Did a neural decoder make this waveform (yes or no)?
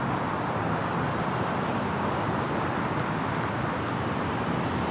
no